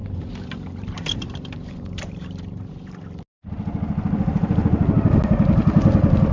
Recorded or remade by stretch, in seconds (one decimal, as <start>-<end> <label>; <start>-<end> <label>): 0.0-2.7 remade; 2.7-4.3 recorded; 4.3-5.1 remade; 5.1-6.3 recorded

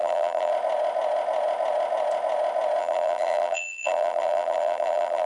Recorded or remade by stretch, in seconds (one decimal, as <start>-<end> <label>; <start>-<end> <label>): 0.0-0.5 remade; 0.5-2.8 recorded; 2.8-5.3 remade

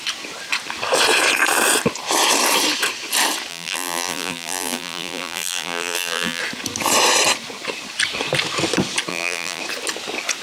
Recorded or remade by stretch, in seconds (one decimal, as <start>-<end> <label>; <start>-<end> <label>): 0.0-3.5 recorded; 3.5-6.4 remade; 6.4-9.1 recorded; 9.1-9.6 remade; 9.6-10.4 recorded

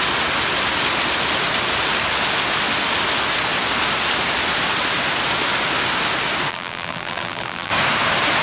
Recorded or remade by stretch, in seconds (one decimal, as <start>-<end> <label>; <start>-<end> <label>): 0.0-6.5 recorded; 6.5-7.7 remade; 7.7-8.4 recorded

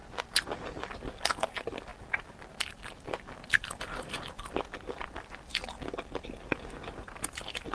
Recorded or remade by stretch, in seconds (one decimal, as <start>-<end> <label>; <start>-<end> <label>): 0.0-0.9 recorded; 0.9-5.5 remade; 5.5-6.9 recorded; 6.9-7.7 remade

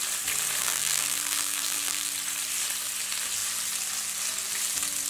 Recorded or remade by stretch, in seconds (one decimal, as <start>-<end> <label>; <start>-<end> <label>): 0.0-0.6 recorded; 0.6-2.1 remade; 2.1-5.1 recorded

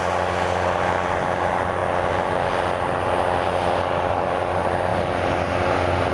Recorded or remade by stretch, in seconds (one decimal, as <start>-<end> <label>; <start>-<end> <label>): 0.0-6.1 recorded

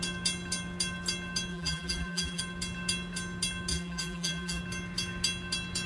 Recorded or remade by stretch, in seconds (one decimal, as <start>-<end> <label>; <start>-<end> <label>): 0.0-1.5 recorded; 1.5-2.4 remade; 2.4-3.7 recorded; 3.7-4.6 remade; 4.6-5.9 recorded